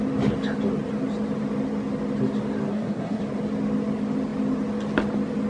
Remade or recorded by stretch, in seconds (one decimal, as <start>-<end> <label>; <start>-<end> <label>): 0.0-2.7 recorded; 2.7-3.2 remade; 3.2-5.5 recorded